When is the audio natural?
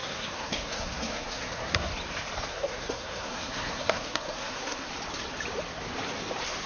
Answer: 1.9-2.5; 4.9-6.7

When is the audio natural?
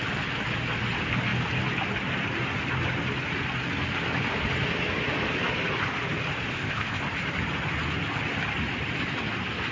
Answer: 0.0-6.5; 7.0-9.7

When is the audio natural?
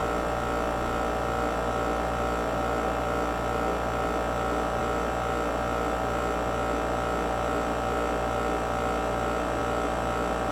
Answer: 0.0-10.5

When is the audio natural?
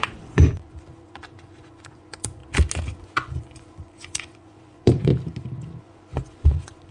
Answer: 2.4-2.9; 5.1-5.8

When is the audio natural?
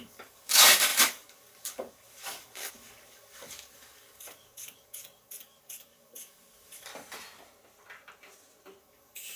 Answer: 6.9-8.8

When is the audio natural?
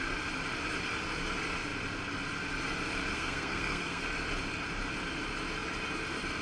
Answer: 0.0-3.1; 4.0-6.4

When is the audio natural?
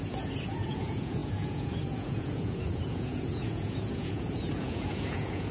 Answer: none